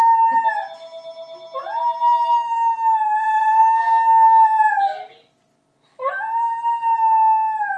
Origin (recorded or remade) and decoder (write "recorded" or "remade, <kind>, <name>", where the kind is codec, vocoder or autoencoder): recorded